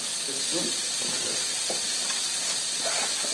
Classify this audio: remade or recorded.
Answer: recorded